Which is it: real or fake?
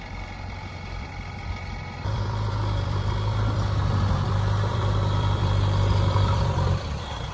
fake